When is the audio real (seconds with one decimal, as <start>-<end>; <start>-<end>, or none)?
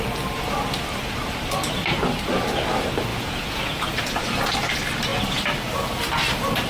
0.0-3.1; 4.2-6.7